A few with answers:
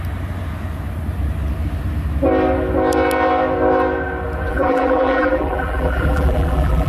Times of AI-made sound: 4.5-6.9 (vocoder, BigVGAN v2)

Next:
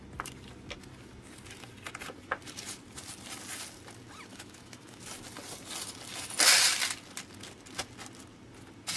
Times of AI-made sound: 4.3-5.0 (autoencoder, DAC-VAE)

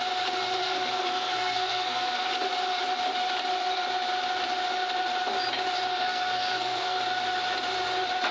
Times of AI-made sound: 0.6-2.3 (codec, SNAC); 5.9-7.0

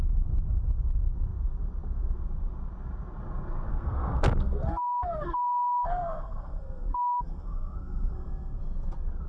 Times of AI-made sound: 3.7-8.6 (codec, SNAC)

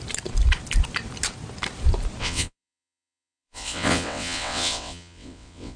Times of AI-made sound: 2.2-5.8 (vocoder, WaveNeXt)

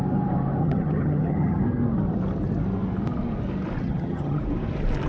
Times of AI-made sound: 0.6-1.6 (vocoder, HiFi-GAN); 3.8-4.4

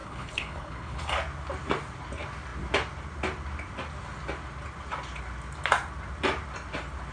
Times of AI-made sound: 0.0-1.1 (codec, HILCodec)

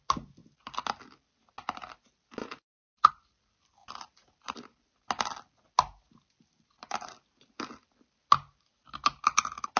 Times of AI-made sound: none